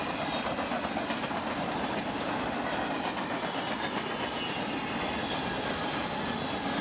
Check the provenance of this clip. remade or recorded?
recorded